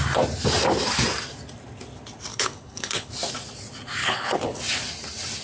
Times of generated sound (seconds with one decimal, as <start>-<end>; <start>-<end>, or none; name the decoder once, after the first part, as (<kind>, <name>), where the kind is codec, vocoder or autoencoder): 2.3-3.1 (codec, HILCodec); 4.0-4.6